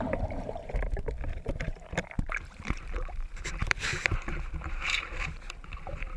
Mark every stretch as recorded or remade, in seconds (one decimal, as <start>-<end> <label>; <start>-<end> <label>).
0.0-6.2 remade